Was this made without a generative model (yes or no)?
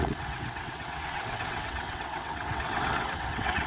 no